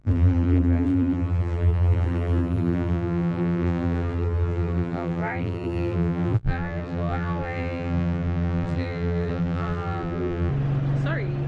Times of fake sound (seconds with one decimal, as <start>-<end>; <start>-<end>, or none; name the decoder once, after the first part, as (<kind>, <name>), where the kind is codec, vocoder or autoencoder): 0.0-10.5 (vocoder, BigVGAN v2)